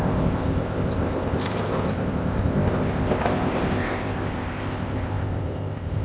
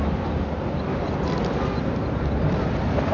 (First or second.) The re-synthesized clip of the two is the first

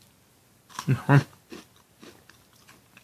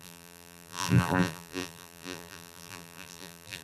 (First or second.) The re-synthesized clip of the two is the second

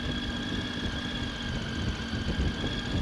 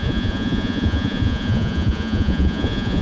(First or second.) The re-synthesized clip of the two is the second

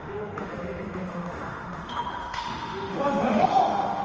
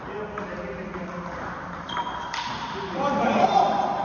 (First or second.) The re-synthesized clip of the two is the first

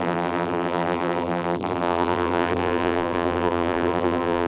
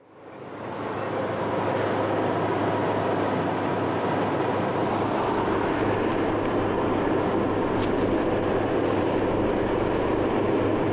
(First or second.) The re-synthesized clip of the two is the first